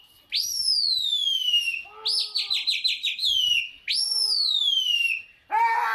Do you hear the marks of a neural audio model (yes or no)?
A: no